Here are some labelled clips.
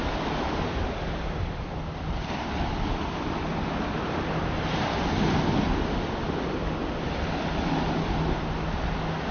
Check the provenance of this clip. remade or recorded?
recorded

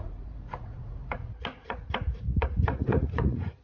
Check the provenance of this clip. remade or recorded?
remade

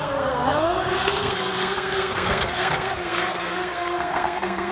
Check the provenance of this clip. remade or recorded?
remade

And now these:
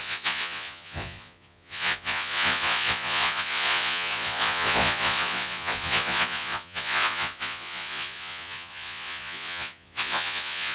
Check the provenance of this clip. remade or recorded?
remade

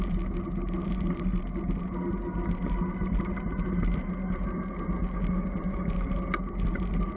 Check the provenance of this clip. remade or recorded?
recorded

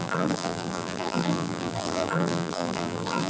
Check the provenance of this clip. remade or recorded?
remade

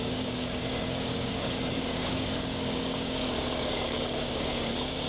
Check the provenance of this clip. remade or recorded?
remade